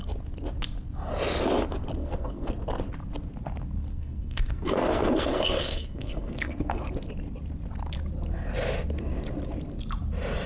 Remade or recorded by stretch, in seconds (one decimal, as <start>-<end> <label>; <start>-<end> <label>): 0.0-2.0 recorded; 2.0-2.5 remade; 2.5-3.9 recorded; 3.9-6.8 remade; 6.8-10.5 recorded